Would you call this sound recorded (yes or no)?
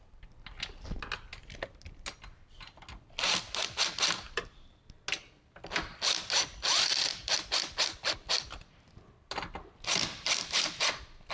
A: yes